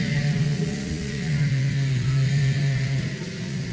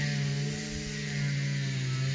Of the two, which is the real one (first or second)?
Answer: second